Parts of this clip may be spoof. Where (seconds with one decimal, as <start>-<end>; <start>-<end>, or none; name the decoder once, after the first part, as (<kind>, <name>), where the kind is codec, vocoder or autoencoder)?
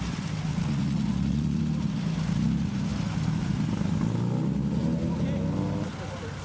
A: 0.5-1.6 (vocoder, Vocos)